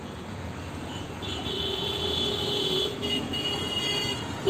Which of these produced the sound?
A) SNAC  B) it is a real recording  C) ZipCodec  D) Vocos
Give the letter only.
D